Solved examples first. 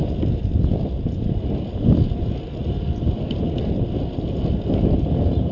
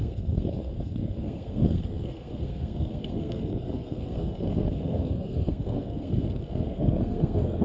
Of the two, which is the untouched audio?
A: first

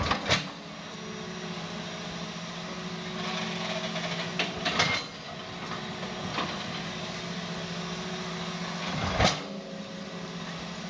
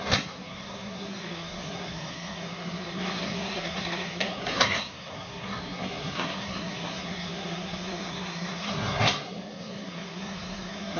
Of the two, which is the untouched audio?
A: first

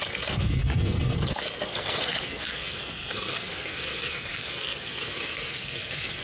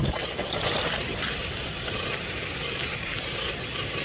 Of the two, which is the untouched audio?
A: second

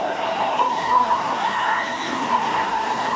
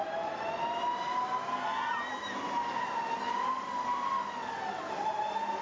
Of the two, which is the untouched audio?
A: second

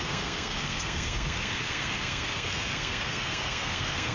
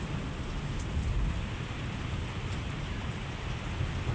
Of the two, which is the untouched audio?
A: second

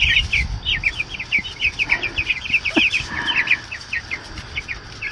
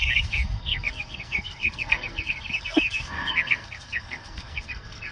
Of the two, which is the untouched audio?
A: first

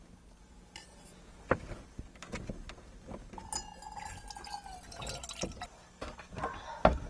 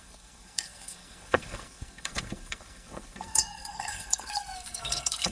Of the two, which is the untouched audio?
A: first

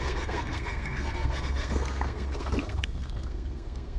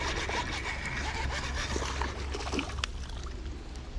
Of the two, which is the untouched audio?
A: second